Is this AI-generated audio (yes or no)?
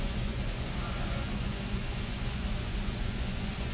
yes